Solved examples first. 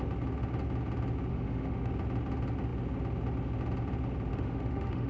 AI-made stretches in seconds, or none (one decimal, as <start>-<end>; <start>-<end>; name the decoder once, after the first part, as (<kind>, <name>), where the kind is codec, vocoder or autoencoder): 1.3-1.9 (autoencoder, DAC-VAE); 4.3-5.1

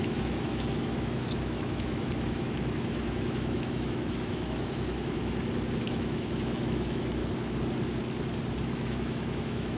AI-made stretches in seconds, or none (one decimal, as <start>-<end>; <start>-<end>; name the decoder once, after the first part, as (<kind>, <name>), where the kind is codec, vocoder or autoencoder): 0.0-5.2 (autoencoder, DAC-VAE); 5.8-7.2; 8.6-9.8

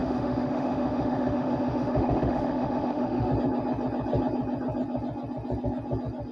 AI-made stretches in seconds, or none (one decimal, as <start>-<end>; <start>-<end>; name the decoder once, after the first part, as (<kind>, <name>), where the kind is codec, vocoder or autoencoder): 0.0-3.3 (autoencoder, DAC-VAE)

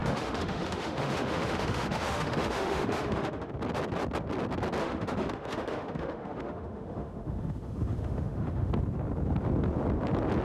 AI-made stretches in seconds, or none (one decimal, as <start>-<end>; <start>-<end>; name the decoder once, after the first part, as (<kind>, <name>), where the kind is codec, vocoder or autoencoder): 0.0-3.5 (autoencoder, DAC-VAE); 4.8-8.7

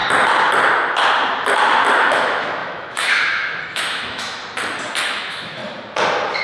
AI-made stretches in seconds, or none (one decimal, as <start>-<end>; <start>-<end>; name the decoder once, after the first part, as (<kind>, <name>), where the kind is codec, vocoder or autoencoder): 1.9-4.4 (autoencoder, DAC-VAE); 5.0-5.6

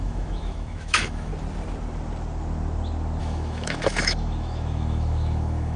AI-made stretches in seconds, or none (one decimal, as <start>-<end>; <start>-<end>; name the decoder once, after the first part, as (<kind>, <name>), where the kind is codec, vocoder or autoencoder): 0.0-1.3 (autoencoder, DAC-VAE); 3.2-5.8